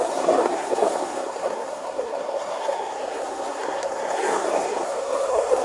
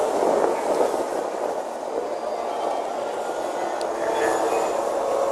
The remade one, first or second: first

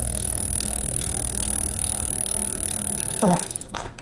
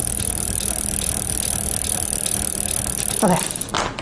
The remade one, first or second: first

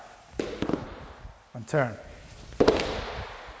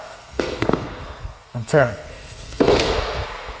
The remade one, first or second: second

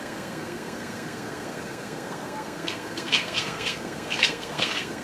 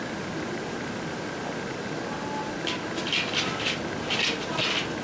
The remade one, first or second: first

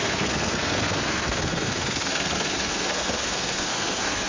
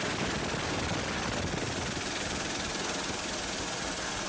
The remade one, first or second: first